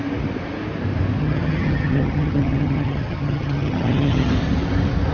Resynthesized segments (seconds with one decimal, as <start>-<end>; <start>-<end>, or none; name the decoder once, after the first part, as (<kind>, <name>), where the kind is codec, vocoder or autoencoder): 1.2-4.3 (vocoder, HiFi-GAN)